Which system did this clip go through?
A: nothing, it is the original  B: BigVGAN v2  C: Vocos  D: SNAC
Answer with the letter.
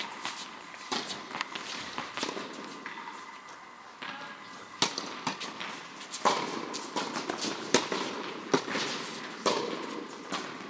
A